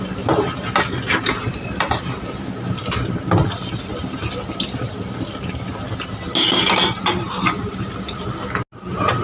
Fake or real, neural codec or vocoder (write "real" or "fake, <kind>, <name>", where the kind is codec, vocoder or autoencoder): real